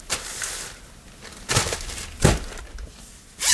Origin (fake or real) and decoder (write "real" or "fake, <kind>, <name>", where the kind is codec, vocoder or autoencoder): real